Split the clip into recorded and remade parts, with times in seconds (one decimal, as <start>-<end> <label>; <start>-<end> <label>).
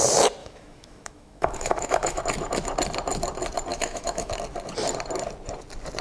0.0-0.4 recorded; 0.4-2.2 remade; 2.2-3.7 recorded; 3.7-4.3 remade; 4.3-6.0 recorded